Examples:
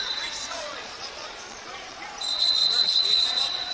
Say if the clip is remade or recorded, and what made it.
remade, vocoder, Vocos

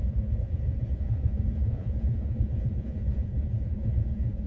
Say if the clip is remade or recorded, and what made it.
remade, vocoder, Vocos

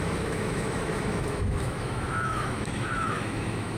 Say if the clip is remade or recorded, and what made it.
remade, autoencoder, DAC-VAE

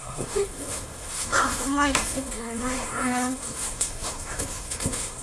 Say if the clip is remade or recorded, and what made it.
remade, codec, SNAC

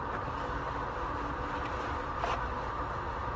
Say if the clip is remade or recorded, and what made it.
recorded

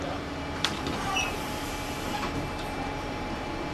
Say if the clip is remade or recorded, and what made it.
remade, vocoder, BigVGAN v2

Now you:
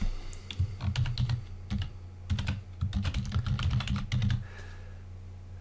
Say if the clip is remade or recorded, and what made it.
recorded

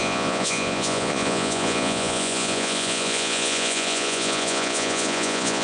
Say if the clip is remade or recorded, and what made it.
remade, vocoder, Vocos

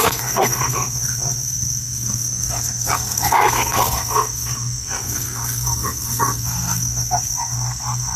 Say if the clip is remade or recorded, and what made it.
remade, codec, SNAC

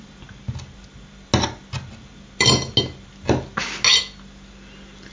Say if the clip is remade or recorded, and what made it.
recorded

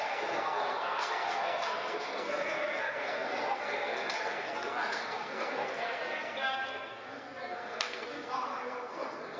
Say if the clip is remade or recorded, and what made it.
remade, codec, SNAC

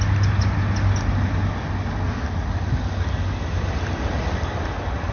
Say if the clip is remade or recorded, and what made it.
recorded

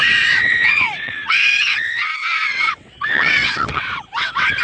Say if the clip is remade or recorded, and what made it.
remade, vocoder, WaveNeXt